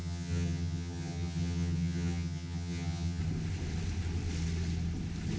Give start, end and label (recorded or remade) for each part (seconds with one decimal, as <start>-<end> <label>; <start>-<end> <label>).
0.0-3.2 remade; 3.2-5.4 recorded